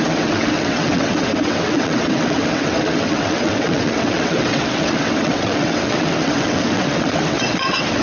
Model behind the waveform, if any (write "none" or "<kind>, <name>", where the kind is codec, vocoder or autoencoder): vocoder, WaveNeXt